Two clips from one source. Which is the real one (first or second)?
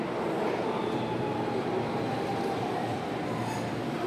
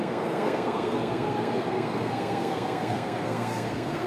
first